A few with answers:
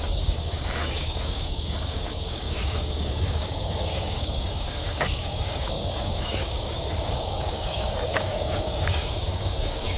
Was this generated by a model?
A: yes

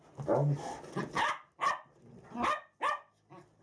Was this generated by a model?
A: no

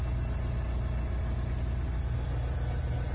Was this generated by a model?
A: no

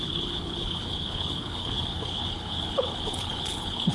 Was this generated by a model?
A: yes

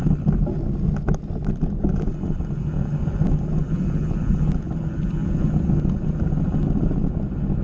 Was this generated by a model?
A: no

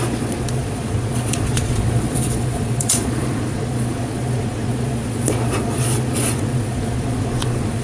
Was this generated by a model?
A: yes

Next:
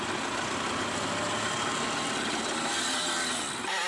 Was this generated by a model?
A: no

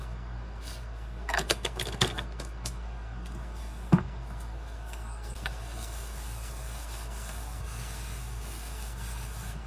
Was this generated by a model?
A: yes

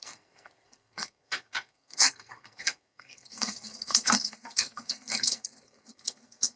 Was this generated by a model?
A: yes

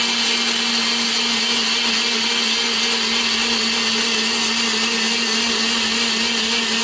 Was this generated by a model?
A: no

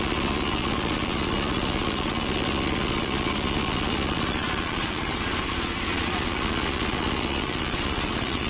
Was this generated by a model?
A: yes